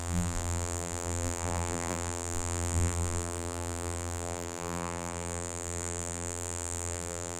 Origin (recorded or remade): remade